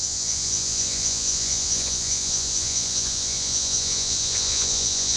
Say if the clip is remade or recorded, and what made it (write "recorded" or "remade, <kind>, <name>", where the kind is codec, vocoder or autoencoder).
remade, vocoder, Vocos